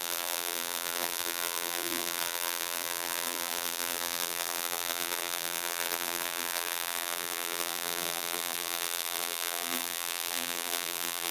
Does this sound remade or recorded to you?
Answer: remade